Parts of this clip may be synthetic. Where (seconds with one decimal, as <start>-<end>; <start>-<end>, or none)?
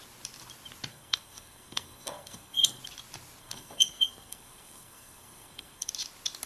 0.9-2.8; 3.4-5.9